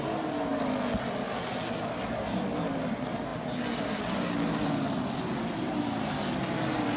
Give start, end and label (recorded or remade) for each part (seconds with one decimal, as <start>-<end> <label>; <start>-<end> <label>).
0.0-7.0 recorded